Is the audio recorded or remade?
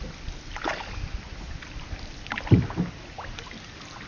recorded